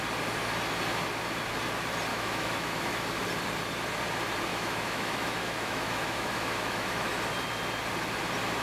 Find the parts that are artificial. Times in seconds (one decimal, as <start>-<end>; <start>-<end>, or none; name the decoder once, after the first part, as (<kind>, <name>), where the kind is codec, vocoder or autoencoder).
2.1-3.2 (autoencoder, DAC-VAE); 4.5-7.1